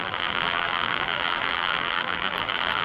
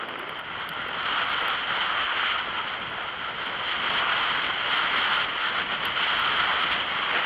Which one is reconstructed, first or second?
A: first